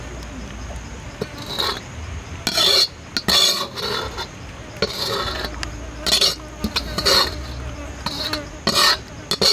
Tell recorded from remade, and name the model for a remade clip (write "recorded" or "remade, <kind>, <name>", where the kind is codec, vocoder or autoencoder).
recorded